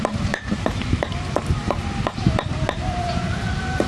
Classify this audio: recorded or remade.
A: remade